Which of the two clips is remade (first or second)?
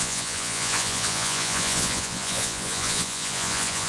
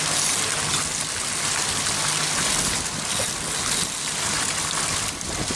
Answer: first